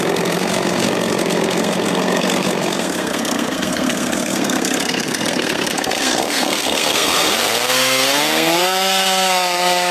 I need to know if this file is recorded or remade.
remade